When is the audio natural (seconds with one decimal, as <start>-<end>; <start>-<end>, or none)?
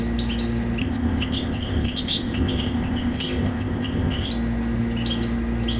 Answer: 0.0-0.8; 4.3-5.8